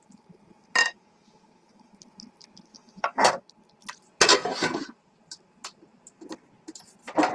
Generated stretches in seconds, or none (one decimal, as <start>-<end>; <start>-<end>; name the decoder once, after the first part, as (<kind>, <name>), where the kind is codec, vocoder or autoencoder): 0.8-1.9 (codec, DAC); 2.7-3.3